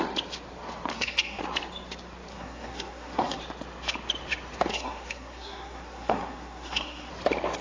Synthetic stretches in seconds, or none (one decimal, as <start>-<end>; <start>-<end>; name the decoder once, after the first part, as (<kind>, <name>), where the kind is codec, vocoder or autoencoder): 0.9-1.4 (codec, SNAC); 2.3-3.4; 4.7-7.1